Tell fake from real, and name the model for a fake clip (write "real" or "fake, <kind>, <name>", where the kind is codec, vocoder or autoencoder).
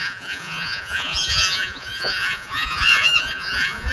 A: fake, vocoder, Vocos